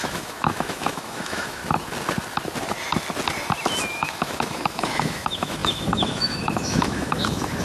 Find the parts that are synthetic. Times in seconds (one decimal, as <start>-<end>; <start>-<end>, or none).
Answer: 0.0-1.6; 3.9-7.6